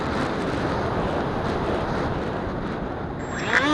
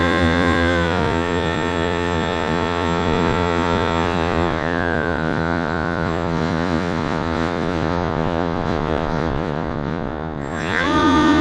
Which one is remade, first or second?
second